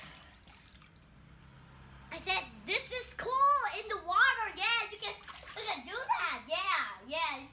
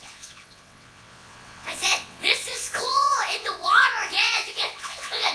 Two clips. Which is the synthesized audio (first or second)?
second